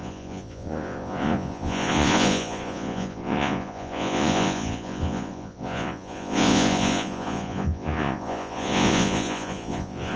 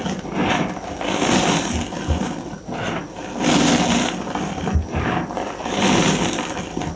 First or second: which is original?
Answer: second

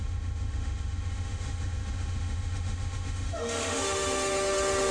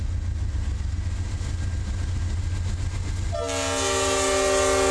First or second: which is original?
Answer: second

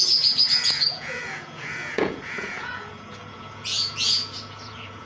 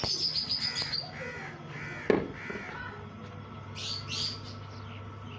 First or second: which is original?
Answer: second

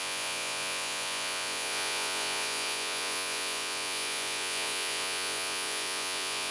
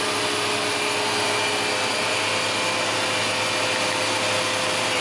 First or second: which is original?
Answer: second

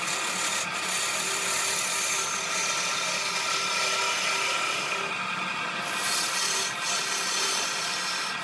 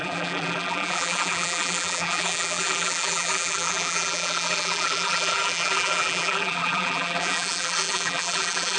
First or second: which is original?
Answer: first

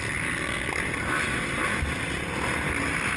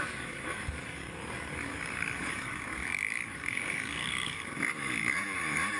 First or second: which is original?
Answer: first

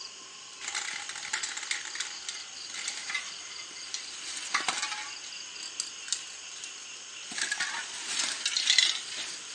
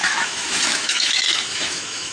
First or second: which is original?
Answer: first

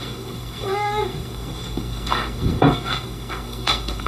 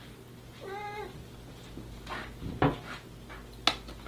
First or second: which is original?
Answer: second